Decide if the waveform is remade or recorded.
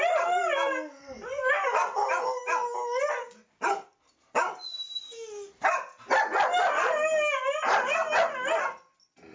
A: recorded